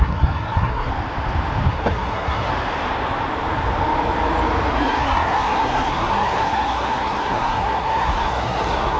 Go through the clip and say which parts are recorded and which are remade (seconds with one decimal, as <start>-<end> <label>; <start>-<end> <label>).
0.0-0.9 remade; 0.9-1.7 recorded; 1.7-2.5 remade; 2.5-4.7 recorded; 4.7-9.0 remade